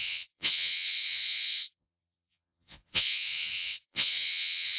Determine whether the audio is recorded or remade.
remade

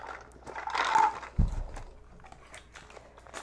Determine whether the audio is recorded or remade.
recorded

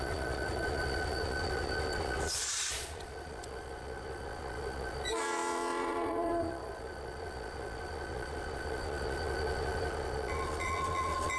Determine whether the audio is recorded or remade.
remade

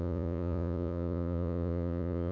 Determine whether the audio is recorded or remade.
remade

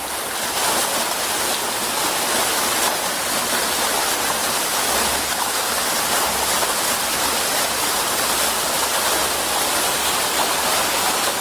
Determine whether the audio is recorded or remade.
recorded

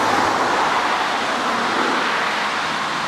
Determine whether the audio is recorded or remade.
recorded